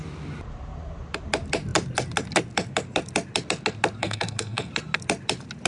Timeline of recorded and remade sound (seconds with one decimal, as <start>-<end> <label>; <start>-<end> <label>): 0.0-4.0 recorded; 4.0-4.7 remade; 4.7-5.7 recorded